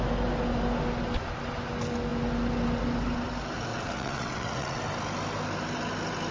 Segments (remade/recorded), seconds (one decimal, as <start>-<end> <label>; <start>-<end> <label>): 0.0-3.7 recorded; 3.7-4.8 remade; 4.8-6.3 recorded